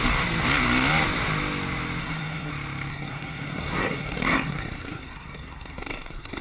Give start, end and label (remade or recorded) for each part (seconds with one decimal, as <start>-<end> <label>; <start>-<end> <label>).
0.0-2.0 recorded; 2.0-2.5 remade; 2.5-2.9 recorded; 2.9-6.4 remade